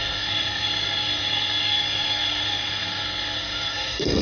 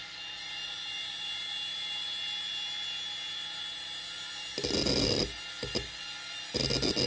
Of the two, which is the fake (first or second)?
first